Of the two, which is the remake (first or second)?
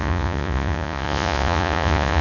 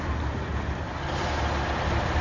first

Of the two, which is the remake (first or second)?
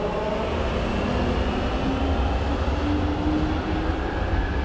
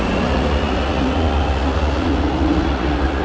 second